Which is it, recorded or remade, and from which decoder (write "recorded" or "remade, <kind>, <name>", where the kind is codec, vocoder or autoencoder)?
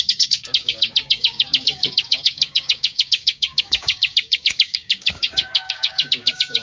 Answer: remade, codec, DAC